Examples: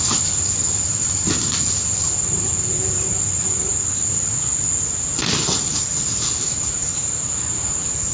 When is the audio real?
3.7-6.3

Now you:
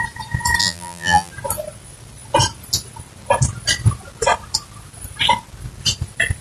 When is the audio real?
0.0-0.6; 1.3-6.4

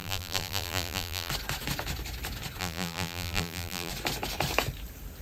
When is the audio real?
1.3-2.6; 3.9-5.2

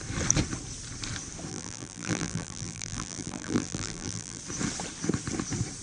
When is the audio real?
0.0-1.5; 4.4-5.8

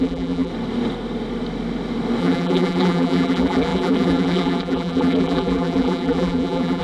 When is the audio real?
0.5-2.2